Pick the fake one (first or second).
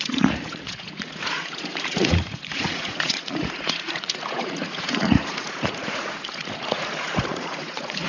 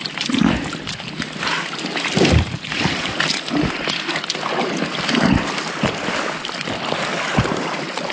first